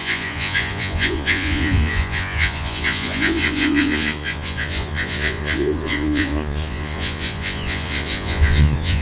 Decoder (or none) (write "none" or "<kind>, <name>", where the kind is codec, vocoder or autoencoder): vocoder, Vocos